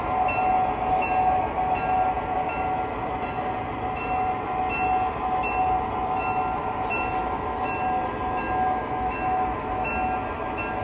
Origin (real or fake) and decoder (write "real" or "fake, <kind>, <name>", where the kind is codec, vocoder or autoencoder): real